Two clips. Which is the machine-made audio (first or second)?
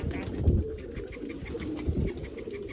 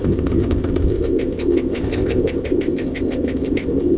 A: second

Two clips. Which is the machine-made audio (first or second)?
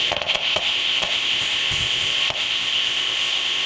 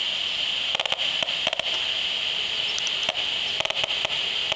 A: first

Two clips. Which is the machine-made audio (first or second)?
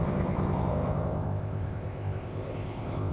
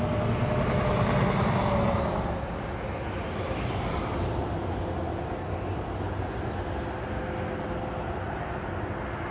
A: first